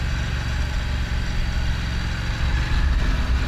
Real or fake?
real